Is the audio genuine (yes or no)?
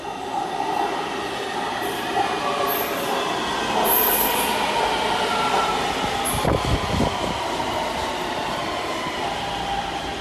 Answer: yes